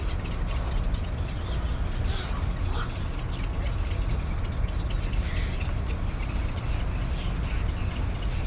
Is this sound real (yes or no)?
yes